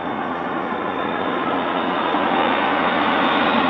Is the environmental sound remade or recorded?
remade